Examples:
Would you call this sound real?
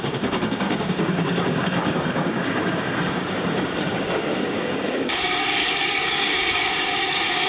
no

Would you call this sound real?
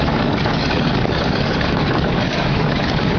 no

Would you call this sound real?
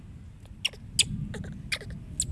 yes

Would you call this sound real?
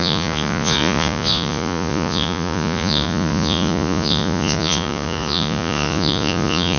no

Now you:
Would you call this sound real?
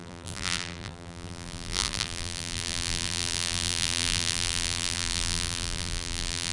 no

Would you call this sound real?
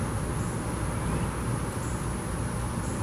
yes